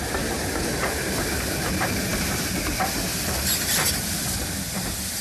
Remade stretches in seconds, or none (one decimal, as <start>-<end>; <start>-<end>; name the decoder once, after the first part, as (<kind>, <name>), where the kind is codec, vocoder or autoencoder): none